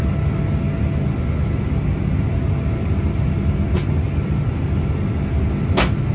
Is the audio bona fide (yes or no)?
yes